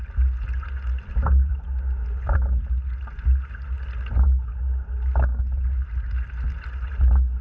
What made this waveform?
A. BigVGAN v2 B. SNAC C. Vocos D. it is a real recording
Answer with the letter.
D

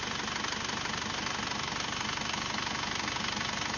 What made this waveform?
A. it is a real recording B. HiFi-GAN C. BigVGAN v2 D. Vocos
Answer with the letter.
A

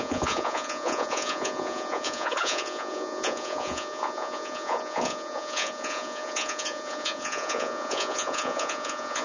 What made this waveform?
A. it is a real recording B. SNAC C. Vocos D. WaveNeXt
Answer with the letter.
C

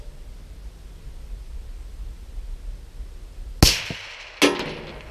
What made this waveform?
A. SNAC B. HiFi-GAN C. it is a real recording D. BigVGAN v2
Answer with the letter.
C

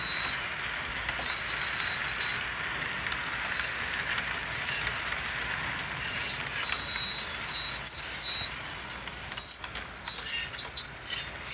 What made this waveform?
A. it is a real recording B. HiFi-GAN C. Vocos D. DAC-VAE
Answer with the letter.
A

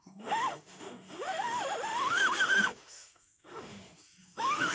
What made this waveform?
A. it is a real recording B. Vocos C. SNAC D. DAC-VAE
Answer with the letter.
D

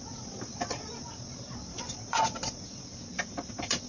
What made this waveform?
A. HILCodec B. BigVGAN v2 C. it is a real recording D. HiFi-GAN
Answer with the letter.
C